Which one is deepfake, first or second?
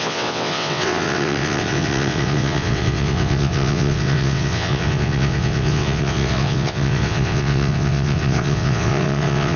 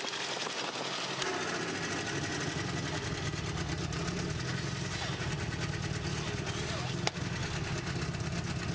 first